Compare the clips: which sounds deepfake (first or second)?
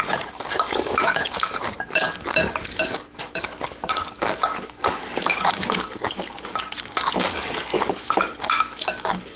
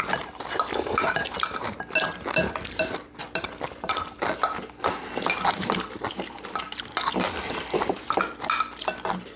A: first